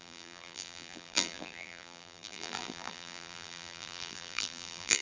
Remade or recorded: remade